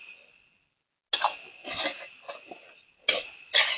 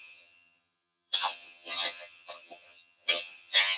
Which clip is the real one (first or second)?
first